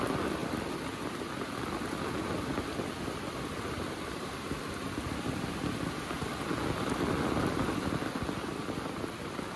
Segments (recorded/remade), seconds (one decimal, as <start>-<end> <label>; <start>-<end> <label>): 0.0-9.6 recorded